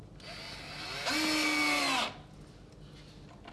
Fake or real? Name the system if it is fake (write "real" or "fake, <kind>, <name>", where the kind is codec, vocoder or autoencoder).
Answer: real